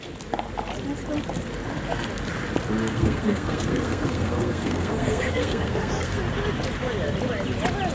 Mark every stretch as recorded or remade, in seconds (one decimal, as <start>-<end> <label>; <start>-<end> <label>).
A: 0.0-2.8 recorded; 2.8-6.2 remade; 6.2-7.9 recorded